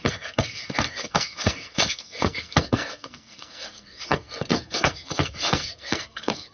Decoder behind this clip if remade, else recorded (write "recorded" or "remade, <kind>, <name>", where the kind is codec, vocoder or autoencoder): remade, codec, SNAC